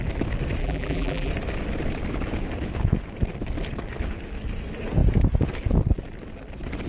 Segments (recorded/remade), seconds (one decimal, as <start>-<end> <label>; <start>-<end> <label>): 0.0-0.6 recorded; 0.6-1.3 remade; 1.3-6.9 recorded